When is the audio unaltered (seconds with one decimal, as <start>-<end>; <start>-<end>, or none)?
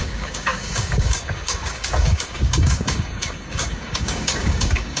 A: none